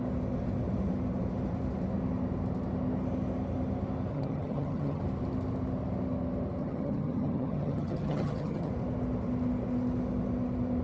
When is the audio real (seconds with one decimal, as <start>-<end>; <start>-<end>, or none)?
0.0-4.1; 5.0-6.6; 8.7-10.8